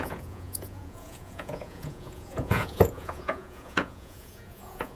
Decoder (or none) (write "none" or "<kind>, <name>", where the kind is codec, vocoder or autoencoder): vocoder, Vocos